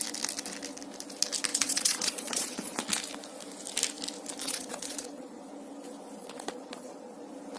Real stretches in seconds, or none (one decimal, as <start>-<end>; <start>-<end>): 0.0-1.5; 2.8-4.4; 5.4-6.2; 7.1-7.6